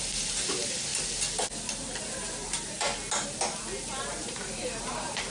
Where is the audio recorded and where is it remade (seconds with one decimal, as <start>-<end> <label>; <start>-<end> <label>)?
0.0-0.9 remade; 0.9-1.6 recorded; 1.6-2.9 remade; 2.9-4.1 recorded; 4.1-5.3 remade